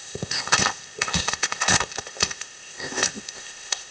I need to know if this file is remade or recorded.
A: remade